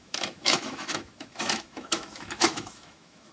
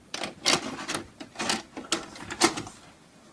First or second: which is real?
second